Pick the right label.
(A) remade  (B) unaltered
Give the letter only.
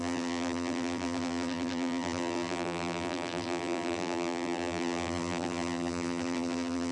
A